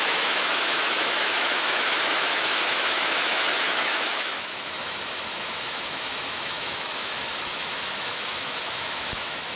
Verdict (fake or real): fake